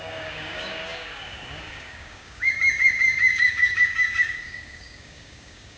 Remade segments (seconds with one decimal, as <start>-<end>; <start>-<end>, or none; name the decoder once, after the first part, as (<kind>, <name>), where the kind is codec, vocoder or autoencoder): 0.0-5.8 (codec, DAC)